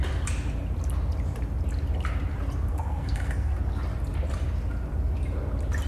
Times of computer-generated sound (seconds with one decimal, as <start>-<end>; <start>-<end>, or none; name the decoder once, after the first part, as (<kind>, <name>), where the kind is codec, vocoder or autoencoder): 2.7-3.6 (codec, SNAC)